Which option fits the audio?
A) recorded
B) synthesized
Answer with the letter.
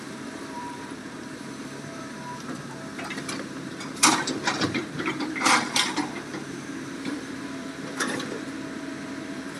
B